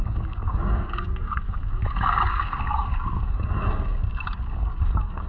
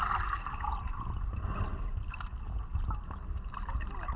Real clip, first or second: second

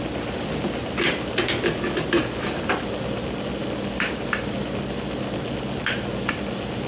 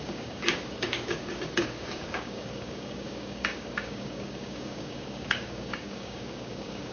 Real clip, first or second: first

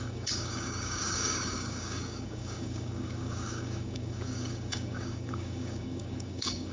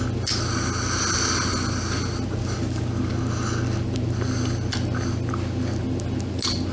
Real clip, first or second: second